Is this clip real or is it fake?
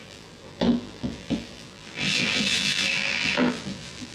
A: fake